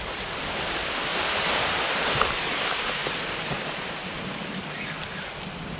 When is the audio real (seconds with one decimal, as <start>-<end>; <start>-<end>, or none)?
0.0-1.1; 2.4-3.0; 4.1-5.8